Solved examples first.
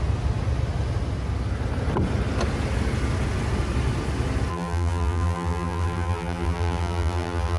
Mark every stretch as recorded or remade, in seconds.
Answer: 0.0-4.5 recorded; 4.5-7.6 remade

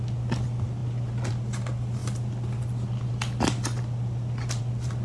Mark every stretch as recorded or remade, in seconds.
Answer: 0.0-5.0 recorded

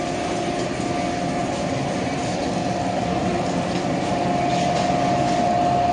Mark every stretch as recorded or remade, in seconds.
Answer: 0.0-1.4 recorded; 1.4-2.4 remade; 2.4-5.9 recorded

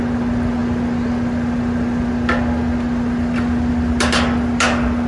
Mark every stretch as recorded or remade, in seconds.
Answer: 0.0-5.1 recorded